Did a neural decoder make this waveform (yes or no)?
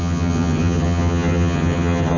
yes